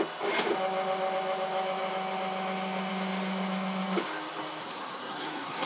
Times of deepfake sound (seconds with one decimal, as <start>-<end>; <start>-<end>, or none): 4.6-5.7